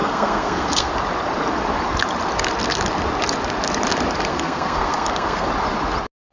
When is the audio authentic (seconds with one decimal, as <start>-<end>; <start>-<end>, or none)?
0.9-4.3; 5.5-6.3